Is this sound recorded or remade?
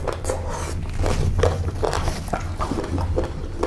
recorded